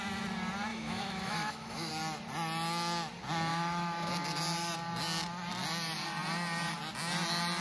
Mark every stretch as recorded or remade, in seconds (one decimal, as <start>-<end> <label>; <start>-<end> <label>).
0.0-0.7 recorded; 0.7-1.9 remade; 1.9-3.5 recorded; 3.5-4.1 remade; 4.1-7.6 recorded